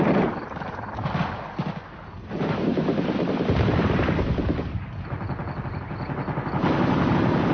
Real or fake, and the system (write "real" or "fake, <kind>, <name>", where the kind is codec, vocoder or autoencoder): real